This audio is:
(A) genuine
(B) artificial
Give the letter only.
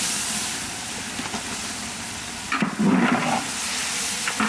A